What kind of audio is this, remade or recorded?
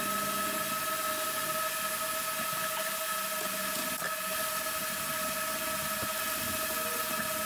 recorded